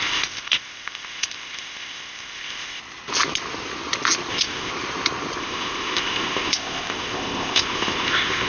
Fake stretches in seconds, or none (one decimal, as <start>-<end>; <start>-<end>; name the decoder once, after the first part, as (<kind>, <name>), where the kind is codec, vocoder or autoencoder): 0.0-2.8 (codec, ZipCodec); 4.3-4.7; 5.4-8.5